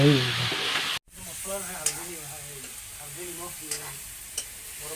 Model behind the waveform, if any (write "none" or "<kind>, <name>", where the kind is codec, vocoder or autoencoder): none